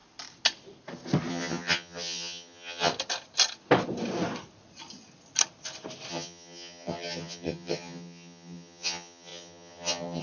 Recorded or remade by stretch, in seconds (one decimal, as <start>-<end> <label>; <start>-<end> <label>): 0.0-1.3 recorded; 1.3-2.9 remade; 2.9-6.1 recorded; 6.1-10.2 remade